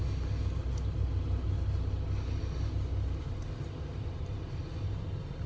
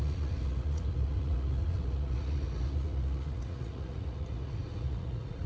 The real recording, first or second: first